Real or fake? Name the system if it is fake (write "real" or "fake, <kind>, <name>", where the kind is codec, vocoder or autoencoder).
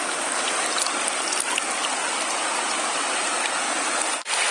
real